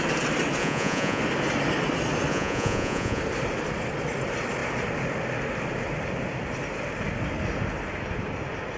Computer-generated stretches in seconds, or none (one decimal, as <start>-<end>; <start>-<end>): 0.6-1.2; 2.3-3.2